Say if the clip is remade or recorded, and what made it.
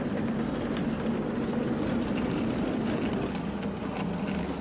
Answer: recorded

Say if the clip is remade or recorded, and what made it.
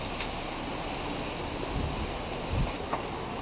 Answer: recorded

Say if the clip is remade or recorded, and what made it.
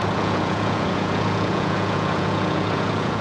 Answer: remade, vocoder, Vocos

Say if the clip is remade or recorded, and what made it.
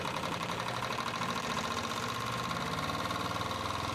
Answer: recorded